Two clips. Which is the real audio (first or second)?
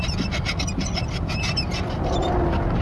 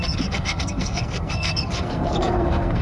first